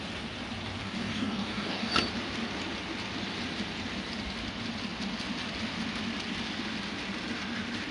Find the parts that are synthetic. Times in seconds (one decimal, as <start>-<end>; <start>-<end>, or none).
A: 0.8-1.9